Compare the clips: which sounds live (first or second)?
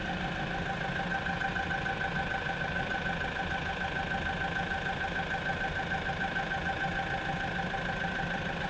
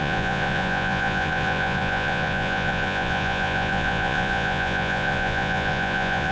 first